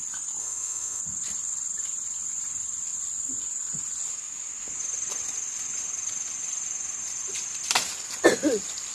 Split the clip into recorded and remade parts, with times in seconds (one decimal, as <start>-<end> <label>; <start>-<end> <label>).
0.0-0.4 recorded; 0.4-1.0 remade; 1.0-8.9 recorded